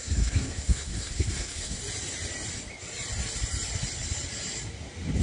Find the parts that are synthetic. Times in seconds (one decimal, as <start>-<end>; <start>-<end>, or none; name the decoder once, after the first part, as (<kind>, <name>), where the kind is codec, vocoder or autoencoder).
0.0-1.8 (codec, SNAC)